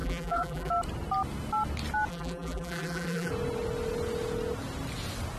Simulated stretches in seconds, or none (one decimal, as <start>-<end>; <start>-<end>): 0.0-0.7; 2.1-3.3